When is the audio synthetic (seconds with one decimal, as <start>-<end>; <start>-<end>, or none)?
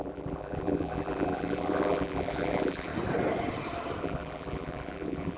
0.0-2.9; 4.0-5.4